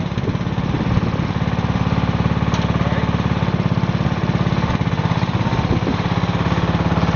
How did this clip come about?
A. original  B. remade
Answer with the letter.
A